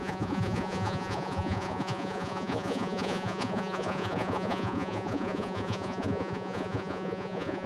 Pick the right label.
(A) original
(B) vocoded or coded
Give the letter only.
B